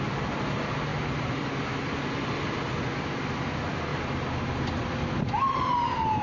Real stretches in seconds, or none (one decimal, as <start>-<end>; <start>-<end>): 0.0-0.9; 2.0-6.2